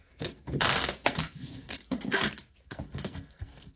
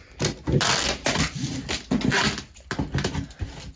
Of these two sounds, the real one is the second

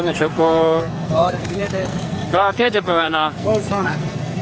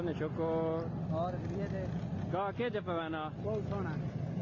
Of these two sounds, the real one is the second